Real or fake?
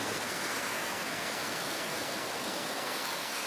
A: fake